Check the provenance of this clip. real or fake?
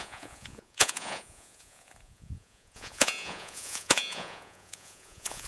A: fake